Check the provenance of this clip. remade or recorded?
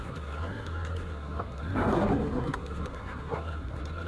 remade